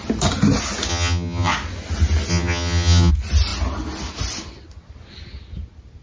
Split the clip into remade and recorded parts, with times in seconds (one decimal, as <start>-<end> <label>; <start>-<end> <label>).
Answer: 0.0-0.9 recorded; 0.9-1.5 remade; 1.5-2.3 recorded; 2.3-3.1 remade; 3.1-6.0 recorded